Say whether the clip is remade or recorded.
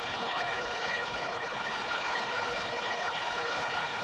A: remade